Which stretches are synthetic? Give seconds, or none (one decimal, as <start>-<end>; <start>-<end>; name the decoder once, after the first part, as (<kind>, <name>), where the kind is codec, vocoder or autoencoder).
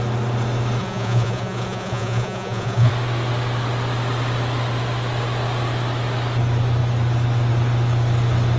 0.8-2.9 (vocoder, Vocos)